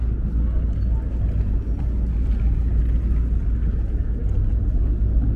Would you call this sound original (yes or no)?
yes